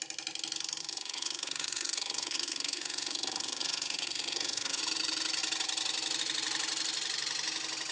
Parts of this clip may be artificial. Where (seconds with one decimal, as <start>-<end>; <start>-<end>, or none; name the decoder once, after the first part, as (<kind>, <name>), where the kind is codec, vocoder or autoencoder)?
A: 0.8-4.8 (codec, SNAC)